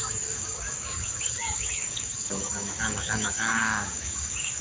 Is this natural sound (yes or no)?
no